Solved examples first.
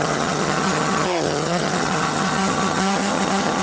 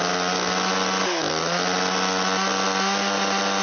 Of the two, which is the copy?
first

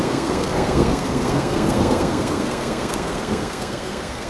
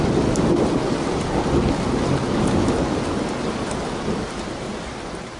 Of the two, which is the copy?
first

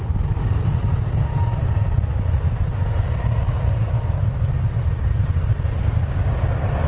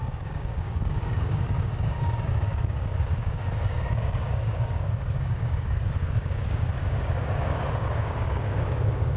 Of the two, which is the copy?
second